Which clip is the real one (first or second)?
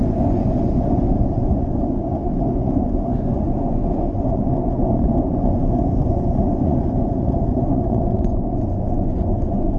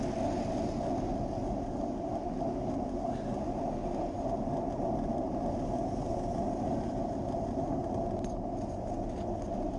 second